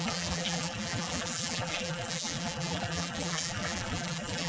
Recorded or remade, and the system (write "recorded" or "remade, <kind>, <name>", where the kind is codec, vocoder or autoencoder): remade, vocoder, BigVGAN v2